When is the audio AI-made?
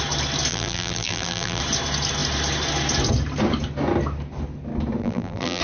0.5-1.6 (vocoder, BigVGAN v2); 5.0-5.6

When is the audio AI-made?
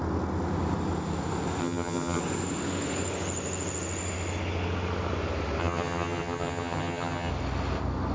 1.6-2.2 (vocoder, HiFi-GAN); 5.6-7.3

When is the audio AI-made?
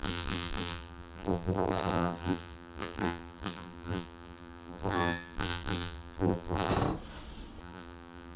0.0-6.7 (vocoder, BigVGAN v2); 7.6-8.4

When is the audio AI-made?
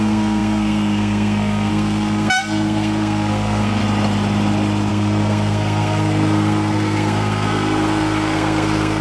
0.0-3.8 (codec, SNAC); 4.9-9.0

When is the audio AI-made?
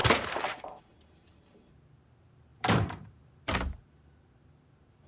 0.0-0.8 (vocoder, BigVGAN v2); 2.5-3.4